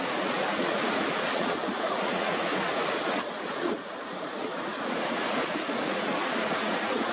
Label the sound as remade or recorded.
remade